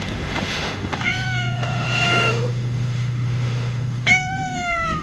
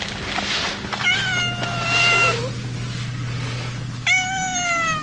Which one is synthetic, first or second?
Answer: first